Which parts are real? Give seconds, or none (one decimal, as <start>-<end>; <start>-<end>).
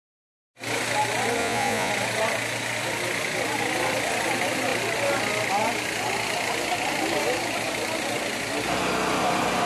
0.0-1.4; 1.9-9.7